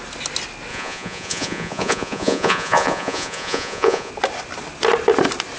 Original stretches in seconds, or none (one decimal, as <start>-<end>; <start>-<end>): 0.0-0.7; 4.1-5.6